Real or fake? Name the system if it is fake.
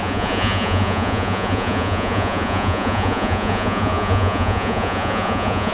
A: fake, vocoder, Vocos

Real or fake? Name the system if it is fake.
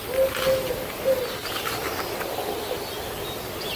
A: real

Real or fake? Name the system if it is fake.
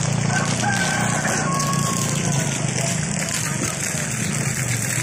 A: real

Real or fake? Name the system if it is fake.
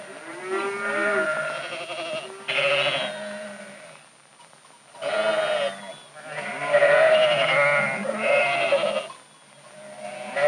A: real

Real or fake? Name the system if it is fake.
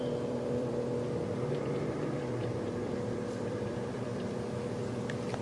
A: fake, vocoder, BigVGAN v2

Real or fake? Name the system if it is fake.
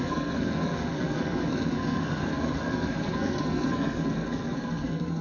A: fake, codec, SNAC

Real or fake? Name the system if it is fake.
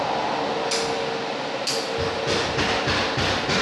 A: real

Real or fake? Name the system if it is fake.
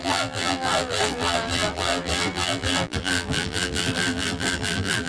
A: fake, vocoder, BigVGAN v2